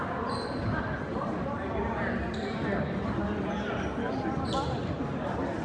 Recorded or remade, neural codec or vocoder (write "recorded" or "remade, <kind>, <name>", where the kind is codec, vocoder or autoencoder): recorded